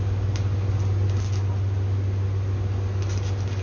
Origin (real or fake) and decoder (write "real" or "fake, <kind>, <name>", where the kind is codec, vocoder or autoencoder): real